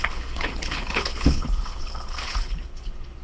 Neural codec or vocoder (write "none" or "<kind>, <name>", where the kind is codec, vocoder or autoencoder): codec, HILCodec